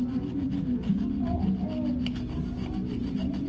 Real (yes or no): yes